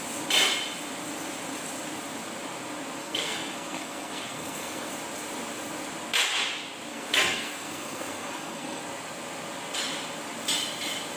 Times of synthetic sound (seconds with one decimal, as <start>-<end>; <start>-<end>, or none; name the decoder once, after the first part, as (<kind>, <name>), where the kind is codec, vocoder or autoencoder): 3.0-4.9 (codec, SNAC); 6.9-8.8

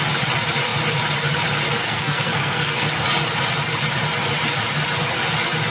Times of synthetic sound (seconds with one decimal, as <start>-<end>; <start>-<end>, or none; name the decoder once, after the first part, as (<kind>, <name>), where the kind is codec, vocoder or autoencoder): 1.8-2.9 (codec, SNAC)